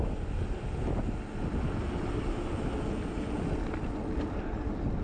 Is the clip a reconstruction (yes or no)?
no